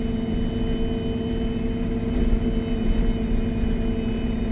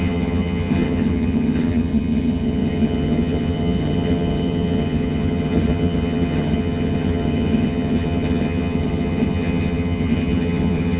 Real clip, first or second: first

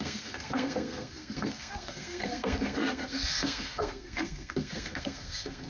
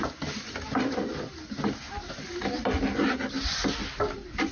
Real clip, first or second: second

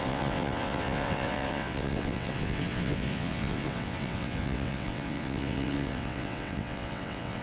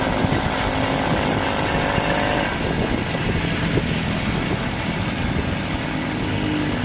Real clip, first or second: second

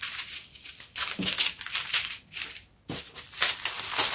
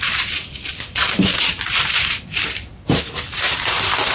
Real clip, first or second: first